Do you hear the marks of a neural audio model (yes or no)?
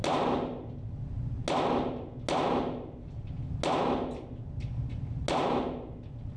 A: no